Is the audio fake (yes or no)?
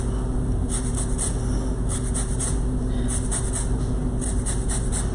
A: no